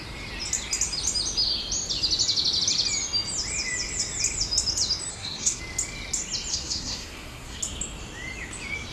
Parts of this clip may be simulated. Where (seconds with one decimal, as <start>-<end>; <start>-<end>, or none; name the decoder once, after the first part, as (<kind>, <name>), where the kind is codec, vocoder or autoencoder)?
5.1-5.6 (codec, SNAC); 6.5-7.6